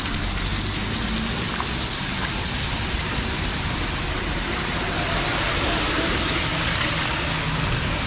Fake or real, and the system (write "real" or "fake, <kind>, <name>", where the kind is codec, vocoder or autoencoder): real